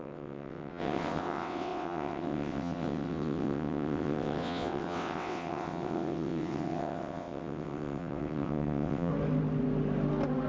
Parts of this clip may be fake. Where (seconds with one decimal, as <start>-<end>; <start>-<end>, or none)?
0.0-9.1